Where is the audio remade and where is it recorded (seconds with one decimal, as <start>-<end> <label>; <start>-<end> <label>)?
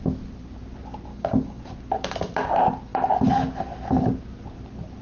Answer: 0.0-1.1 recorded; 1.1-1.6 remade; 1.6-5.0 recorded